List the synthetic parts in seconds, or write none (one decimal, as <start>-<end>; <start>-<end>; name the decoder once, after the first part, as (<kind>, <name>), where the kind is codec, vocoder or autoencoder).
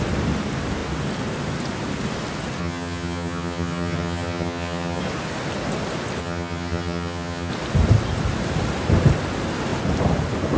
2.6-5.0 (vocoder, HiFi-GAN); 6.2-7.5